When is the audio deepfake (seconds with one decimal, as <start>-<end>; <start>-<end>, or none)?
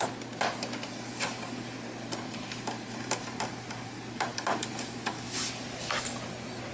none